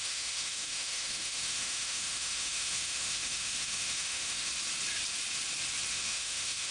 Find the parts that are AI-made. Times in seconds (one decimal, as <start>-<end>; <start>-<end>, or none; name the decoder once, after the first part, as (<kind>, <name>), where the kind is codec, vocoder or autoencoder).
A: 0.0-4.5 (autoencoder, DAC-VAE); 5.9-6.7